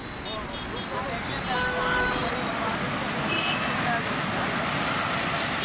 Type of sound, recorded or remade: recorded